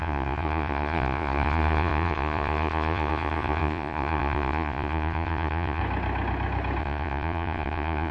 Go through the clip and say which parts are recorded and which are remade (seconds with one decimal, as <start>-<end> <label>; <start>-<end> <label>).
0.0-5.8 remade; 5.8-6.8 recorded; 6.8-8.1 remade